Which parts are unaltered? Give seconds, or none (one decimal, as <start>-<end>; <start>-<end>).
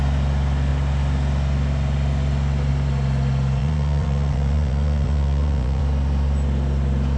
0.0-3.6; 5.8-7.2